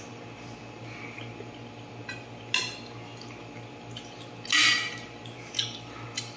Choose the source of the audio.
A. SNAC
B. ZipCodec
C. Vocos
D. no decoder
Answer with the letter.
D